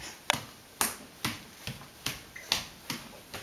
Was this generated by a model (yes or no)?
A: no